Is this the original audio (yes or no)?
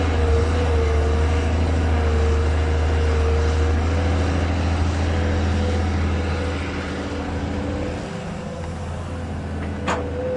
yes